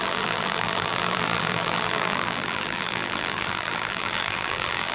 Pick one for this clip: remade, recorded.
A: remade